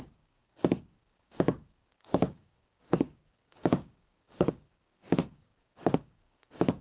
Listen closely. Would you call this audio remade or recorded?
remade